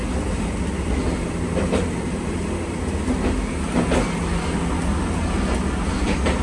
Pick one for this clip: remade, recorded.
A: recorded